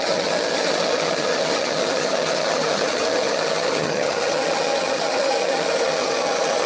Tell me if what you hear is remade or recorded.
remade